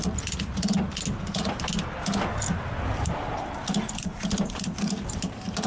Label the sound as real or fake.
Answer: real